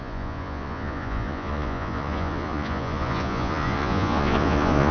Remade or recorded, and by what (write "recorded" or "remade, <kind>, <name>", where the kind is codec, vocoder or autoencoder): remade, vocoder, Vocos